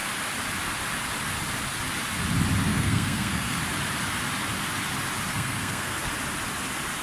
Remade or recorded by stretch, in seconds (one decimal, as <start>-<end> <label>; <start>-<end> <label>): 0.0-2.7 recorded; 2.7-3.6 remade; 3.6-5.3 recorded; 5.3-6.1 remade; 6.1-7.0 recorded